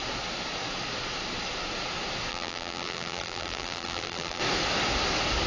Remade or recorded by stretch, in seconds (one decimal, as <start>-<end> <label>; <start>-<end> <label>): 0.0-2.3 recorded; 2.3-4.4 remade; 4.4-5.5 recorded

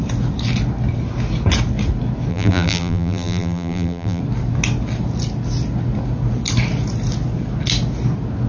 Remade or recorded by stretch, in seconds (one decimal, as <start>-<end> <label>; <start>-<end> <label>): 0.0-2.3 recorded; 2.3-4.2 remade; 4.2-8.5 recorded

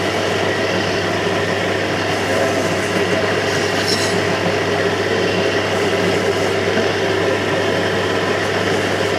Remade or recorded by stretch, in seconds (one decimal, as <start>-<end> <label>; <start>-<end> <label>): 0.0-9.2 recorded

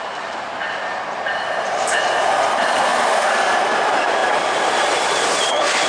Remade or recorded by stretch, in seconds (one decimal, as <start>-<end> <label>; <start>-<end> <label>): 0.0-5.9 remade

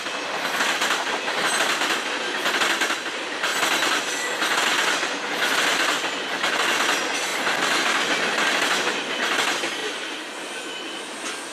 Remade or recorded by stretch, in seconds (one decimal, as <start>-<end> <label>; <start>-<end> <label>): 0.0-9.8 recorded; 9.8-10.3 remade; 10.3-11.5 recorded

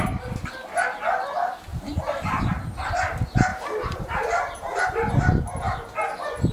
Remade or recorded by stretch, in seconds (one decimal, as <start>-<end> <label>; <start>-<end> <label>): 0.0-1.7 recorded; 1.7-2.4 remade; 2.4-3.5 recorded; 3.5-5.1 remade; 5.1-6.5 recorded